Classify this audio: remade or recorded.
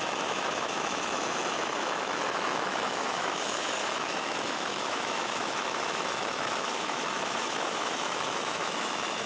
remade